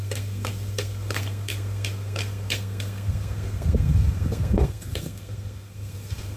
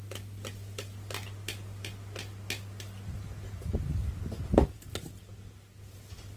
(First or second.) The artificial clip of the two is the first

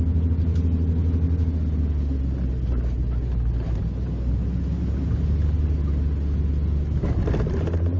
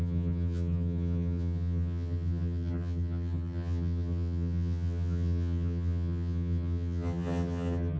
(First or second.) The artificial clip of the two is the second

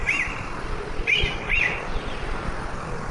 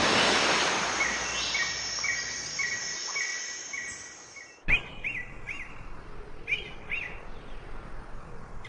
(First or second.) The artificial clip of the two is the first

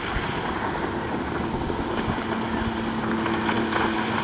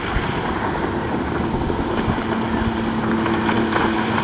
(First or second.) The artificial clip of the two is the second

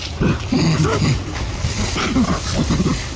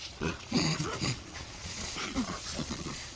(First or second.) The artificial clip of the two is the second